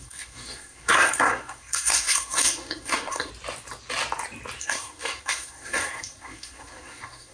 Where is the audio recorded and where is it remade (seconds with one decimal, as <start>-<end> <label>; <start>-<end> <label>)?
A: 0.0-3.3 remade; 3.3-4.6 recorded; 4.6-7.3 remade